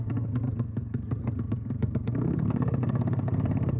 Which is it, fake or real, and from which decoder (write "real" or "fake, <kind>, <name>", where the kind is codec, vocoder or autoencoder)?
fake, codec, SNAC